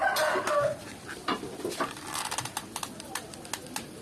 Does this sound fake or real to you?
real